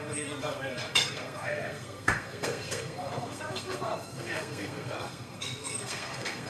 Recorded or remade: remade